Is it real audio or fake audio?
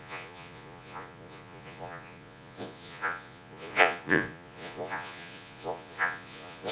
fake